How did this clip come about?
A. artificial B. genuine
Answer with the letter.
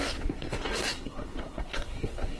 A